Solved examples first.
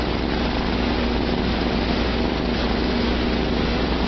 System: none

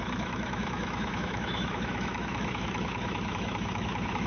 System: autoencoder, DAC-VAE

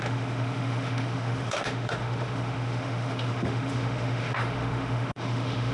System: autoencoder, DAC-VAE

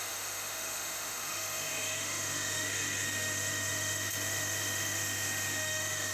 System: autoencoder, DAC-VAE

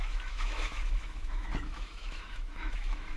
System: autoencoder, DAC-VAE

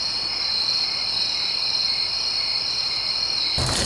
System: none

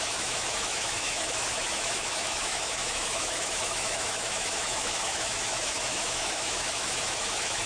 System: autoencoder, DAC-VAE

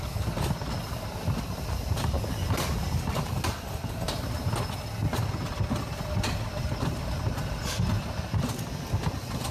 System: none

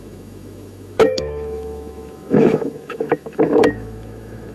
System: autoencoder, DAC-VAE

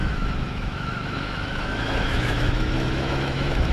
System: autoencoder, DAC-VAE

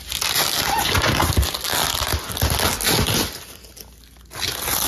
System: none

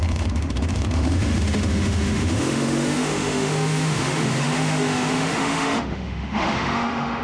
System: autoencoder, DAC-VAE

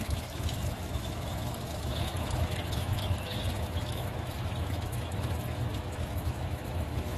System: autoencoder, DAC-VAE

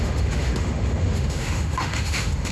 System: autoencoder, DAC-VAE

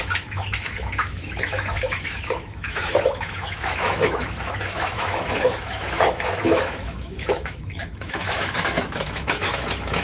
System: autoencoder, DAC-VAE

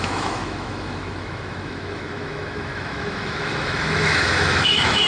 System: autoencoder, DAC-VAE